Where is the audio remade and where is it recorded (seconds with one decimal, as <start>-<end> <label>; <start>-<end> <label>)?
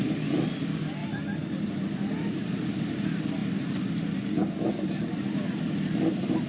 0.0-6.5 recorded